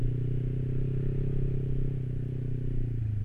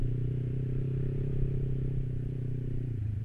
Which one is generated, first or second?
second